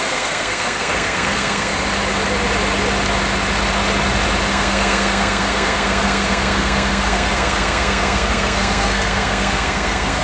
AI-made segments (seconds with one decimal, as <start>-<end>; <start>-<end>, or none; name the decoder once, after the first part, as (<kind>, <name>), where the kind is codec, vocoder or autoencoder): 0.0-1.7 (codec, SNAC); 4.5-10.2